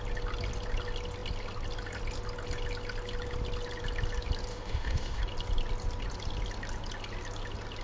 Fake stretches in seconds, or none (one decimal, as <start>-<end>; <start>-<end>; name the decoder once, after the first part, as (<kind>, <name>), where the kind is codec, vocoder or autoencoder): 4.5-5.2 (autoencoder, DAC-VAE)